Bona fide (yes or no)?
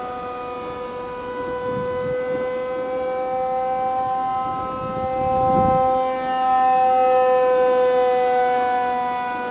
yes